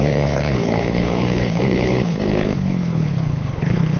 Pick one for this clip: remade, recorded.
remade